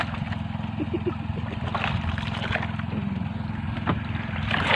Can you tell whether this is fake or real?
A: real